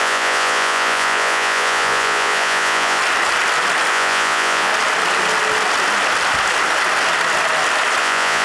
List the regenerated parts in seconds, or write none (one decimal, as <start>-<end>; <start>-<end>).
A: 0.0-3.0; 3.9-4.7; 8.0-8.4